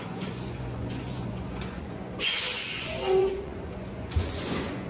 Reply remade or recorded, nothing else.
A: remade